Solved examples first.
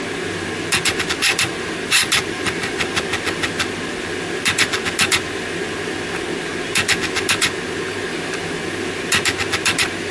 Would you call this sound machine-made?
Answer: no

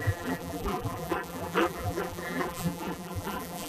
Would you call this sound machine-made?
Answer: yes